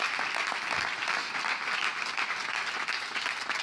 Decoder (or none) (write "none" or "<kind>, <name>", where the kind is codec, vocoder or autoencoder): none